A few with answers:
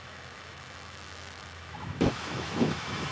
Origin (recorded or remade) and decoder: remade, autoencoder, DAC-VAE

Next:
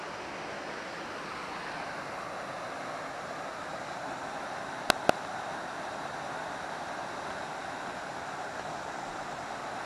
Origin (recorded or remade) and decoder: recorded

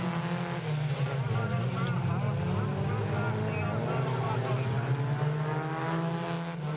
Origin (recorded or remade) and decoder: recorded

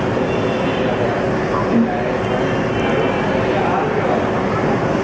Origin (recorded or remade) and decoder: recorded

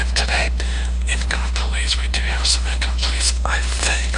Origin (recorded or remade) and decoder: remade, autoencoder, DAC-VAE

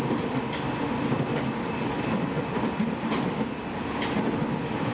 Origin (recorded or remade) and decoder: recorded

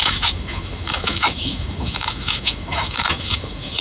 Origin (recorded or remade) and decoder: remade, autoencoder, DAC-VAE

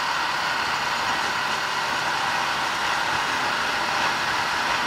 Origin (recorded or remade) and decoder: recorded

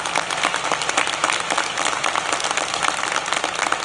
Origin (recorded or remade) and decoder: recorded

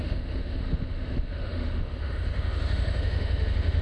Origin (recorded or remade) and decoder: remade, autoencoder, DAC-VAE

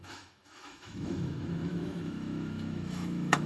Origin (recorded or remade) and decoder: remade, autoencoder, DAC-VAE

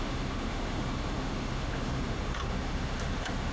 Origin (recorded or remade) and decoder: remade, autoencoder, DAC-VAE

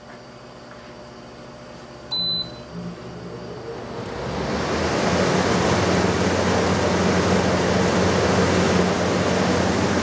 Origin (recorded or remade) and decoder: recorded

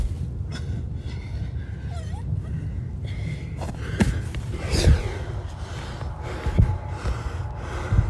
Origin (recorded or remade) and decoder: recorded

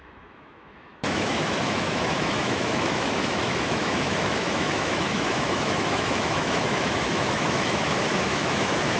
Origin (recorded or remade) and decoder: remade, autoencoder, DAC-VAE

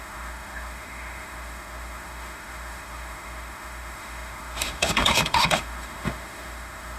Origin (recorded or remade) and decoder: remade, autoencoder, DAC-VAE